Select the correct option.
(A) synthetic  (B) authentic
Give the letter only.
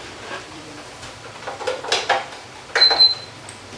A